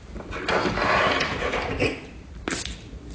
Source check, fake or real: real